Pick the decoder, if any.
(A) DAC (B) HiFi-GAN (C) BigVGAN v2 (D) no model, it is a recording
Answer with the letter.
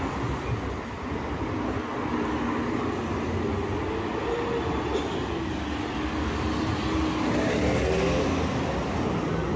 D